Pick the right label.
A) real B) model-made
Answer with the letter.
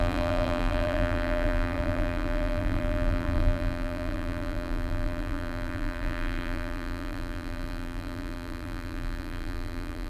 B